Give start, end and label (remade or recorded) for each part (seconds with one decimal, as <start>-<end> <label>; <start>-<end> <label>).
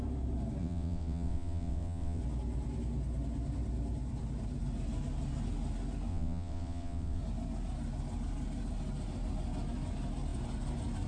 0.0-0.6 recorded; 0.6-2.2 remade; 2.2-6.1 recorded; 6.1-7.2 remade; 7.2-11.1 recorded